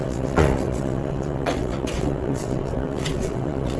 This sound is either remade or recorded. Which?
remade